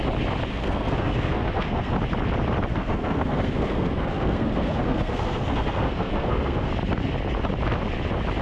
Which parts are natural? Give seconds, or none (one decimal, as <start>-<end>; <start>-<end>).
0.0-0.5; 1.9-2.7; 6.7-8.4

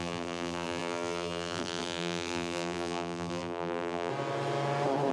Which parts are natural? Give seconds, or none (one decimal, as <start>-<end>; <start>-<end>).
4.1-5.1

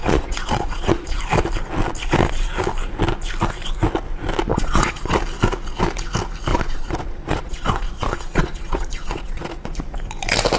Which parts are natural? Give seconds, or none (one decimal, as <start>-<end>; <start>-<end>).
1.2-4.5; 5.2-6.5; 9.8-10.6

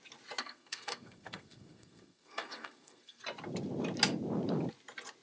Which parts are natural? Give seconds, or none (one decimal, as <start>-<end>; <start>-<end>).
0.0-0.4; 3.2-5.2

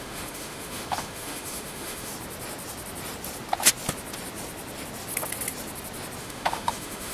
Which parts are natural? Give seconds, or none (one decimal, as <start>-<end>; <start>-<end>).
2.1-6.2